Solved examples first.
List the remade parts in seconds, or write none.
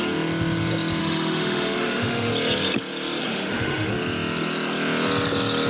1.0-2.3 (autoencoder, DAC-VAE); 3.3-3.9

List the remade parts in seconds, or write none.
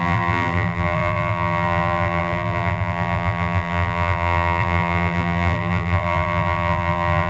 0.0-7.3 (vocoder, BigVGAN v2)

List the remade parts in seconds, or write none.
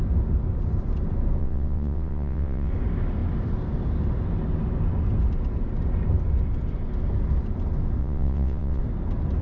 1.4-2.7 (vocoder, WaveNeXt); 8.0-8.8